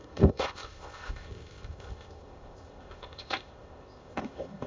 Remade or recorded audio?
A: remade